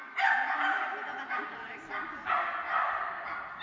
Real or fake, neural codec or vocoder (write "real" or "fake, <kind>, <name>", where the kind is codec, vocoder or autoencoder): real